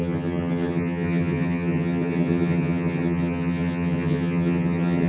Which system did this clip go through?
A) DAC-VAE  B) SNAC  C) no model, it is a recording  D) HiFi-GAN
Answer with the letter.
D